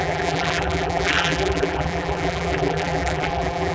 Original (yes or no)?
no